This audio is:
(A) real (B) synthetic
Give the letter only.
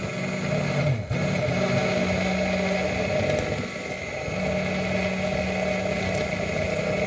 A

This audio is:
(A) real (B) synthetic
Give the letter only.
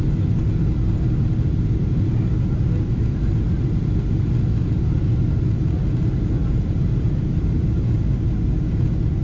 A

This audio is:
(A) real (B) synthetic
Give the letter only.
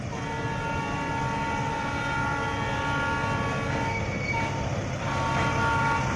A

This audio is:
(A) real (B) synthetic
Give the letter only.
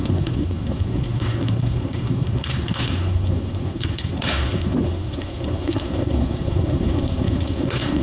B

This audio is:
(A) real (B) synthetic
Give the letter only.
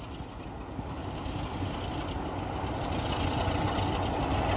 A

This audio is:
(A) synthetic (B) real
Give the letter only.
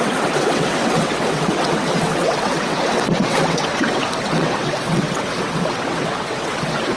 A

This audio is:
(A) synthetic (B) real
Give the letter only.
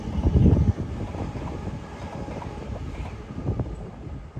B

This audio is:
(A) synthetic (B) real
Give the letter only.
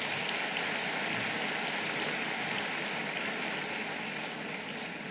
B